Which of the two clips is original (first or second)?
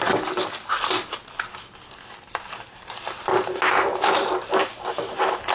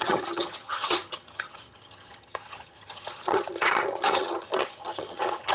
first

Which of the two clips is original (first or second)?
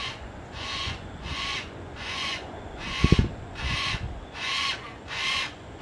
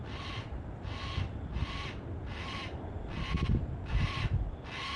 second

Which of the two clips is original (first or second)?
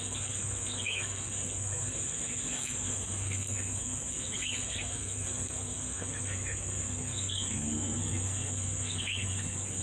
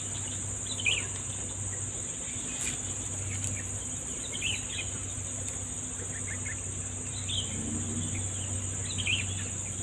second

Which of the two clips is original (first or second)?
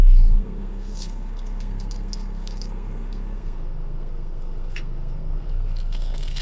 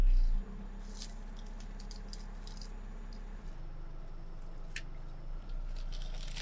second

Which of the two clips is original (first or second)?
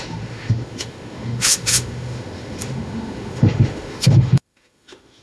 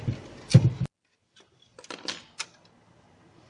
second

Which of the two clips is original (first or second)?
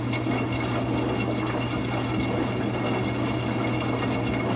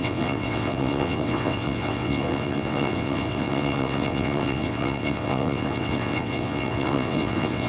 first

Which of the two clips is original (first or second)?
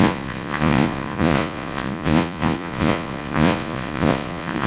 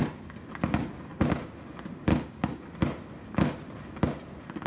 second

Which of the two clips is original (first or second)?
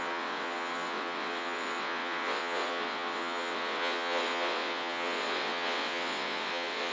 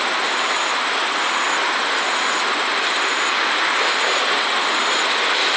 second